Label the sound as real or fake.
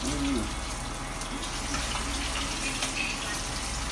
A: real